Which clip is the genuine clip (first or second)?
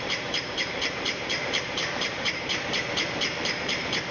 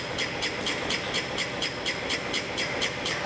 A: second